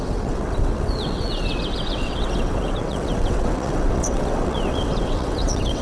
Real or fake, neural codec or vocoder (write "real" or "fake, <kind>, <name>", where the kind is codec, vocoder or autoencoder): fake, vocoder, WaveNeXt